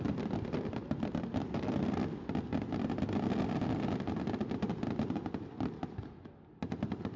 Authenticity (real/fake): real